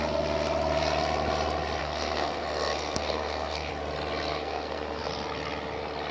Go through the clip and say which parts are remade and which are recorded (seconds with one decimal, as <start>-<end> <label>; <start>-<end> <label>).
0.0-1.8 recorded; 1.8-3.7 remade; 3.7-4.3 recorded; 4.3-5.1 remade; 5.1-6.1 recorded